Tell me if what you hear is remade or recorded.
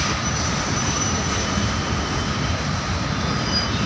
recorded